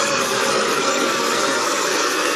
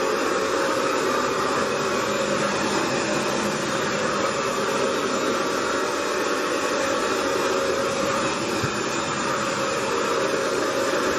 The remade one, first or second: first